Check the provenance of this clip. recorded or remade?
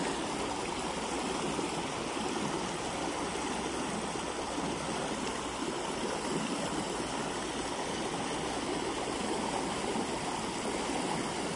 recorded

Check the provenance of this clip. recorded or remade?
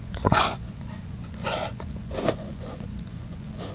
remade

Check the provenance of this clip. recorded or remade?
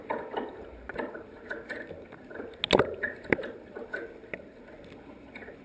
recorded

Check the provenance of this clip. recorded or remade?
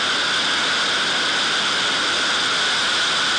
recorded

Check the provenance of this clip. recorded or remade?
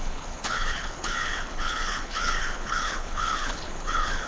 remade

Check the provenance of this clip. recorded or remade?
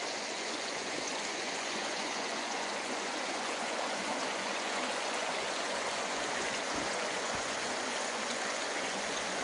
remade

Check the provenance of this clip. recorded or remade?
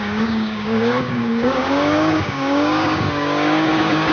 remade